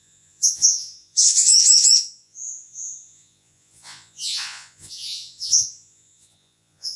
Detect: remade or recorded remade